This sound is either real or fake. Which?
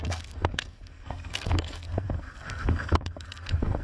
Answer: fake